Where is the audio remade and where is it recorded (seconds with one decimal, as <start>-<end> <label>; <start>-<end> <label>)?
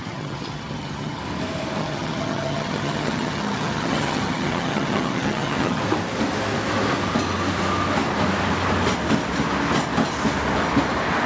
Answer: 0.0-1.2 remade; 1.2-1.8 recorded; 1.8-5.8 remade; 5.8-11.3 recorded